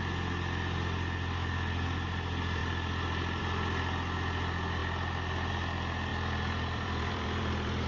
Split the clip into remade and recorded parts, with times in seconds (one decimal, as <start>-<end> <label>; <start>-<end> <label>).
0.0-6.1 recorded; 6.1-7.9 remade